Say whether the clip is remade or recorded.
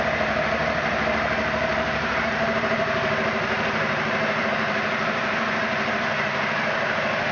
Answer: remade